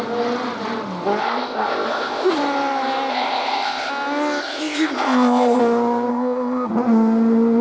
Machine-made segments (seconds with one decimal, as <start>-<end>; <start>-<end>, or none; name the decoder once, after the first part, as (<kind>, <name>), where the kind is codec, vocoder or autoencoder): 1.2-2.3 (codec, ZipCodec); 3.1-3.9; 4.4-5.6; 6.1-6.7